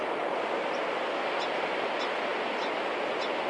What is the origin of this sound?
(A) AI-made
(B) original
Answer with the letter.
B